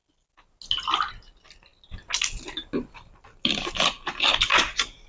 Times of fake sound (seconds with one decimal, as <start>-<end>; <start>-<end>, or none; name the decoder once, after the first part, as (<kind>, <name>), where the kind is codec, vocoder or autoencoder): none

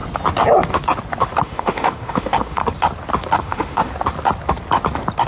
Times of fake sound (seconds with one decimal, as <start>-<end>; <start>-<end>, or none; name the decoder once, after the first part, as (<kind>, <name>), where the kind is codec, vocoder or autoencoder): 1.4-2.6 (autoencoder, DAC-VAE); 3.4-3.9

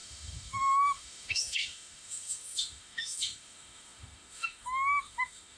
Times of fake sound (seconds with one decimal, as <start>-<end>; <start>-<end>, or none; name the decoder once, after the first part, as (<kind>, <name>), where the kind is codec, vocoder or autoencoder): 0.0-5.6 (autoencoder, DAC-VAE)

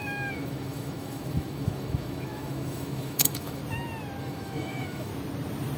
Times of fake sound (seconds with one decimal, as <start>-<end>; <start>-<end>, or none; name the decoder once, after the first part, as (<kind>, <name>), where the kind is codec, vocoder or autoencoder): 0.0-3.6 (autoencoder, DAC-VAE); 4.2-5.1

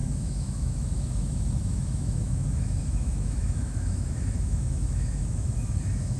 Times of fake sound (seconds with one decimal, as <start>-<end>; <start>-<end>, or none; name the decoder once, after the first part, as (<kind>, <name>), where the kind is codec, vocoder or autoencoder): 0.0-6.2 (autoencoder, DAC-VAE)

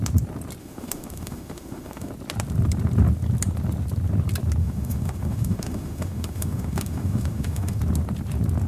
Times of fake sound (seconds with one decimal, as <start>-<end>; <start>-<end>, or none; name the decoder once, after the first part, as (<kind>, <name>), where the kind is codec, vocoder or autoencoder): 0.6-2.1 (autoencoder, DAC-VAE); 4.6-7.8

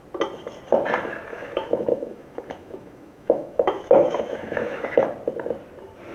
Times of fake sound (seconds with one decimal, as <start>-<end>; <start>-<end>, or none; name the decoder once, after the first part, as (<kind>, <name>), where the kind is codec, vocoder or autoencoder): 1.3-5.0 (autoencoder, DAC-VAE)

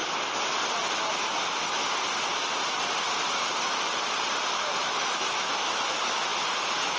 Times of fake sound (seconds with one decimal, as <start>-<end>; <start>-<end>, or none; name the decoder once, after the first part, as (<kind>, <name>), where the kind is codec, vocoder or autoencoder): 1.1-1.8 (autoencoder, DAC-VAE); 4.5-7.0